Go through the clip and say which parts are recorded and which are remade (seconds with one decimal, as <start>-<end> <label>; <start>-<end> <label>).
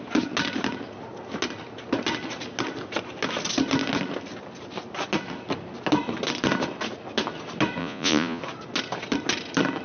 0.0-7.8 recorded; 7.8-8.4 remade; 8.4-9.8 recorded